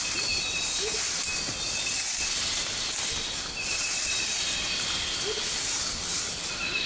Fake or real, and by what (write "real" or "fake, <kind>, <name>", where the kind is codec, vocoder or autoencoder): real